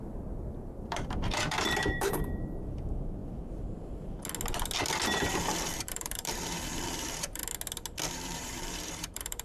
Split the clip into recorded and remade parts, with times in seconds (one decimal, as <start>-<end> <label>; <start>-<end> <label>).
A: 0.0-3.2 remade; 3.2-5.1 recorded; 5.1-7.4 remade; 7.4-8.1 recorded; 8.1-9.4 remade